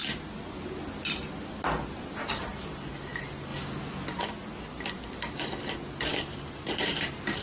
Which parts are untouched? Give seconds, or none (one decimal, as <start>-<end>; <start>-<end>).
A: 0.0-6.1